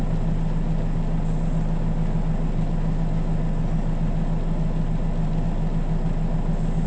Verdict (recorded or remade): recorded